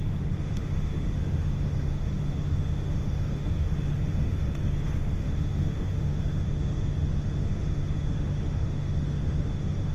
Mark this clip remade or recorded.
remade